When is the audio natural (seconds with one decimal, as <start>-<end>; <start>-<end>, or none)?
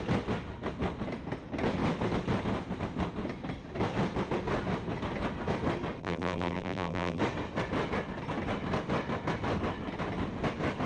0.0-6.0; 7.2-10.9